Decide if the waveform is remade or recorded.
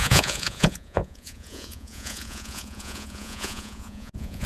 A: remade